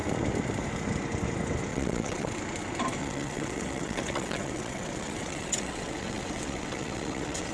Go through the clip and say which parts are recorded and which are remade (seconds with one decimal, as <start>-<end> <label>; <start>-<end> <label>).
0.0-1.7 recorded; 1.7-2.4 remade; 2.4-3.0 recorded; 3.0-7.5 remade